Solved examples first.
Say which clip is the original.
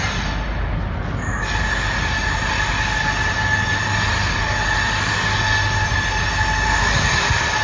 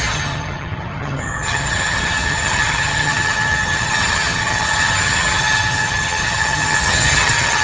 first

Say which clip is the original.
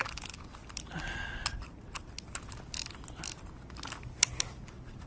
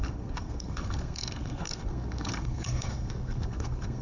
first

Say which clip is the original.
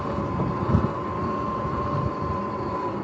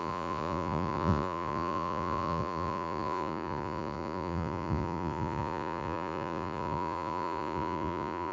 first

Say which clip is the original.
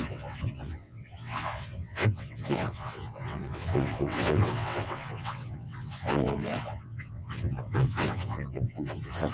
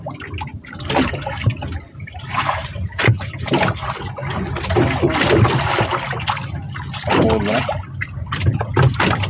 second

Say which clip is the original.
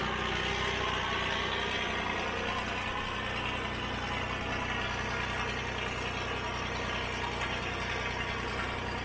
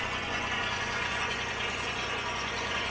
first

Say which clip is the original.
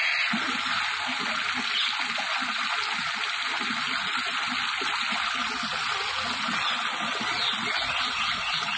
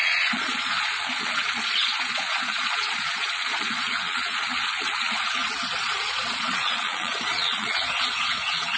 first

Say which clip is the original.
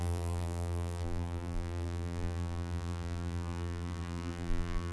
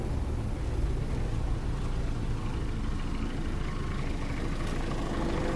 second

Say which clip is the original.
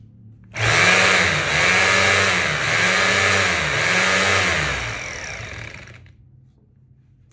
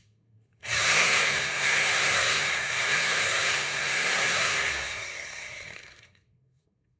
first